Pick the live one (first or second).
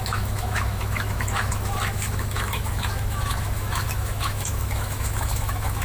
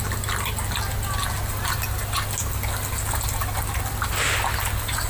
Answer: second